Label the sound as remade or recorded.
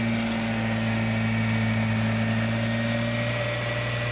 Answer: recorded